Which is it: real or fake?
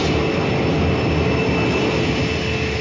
real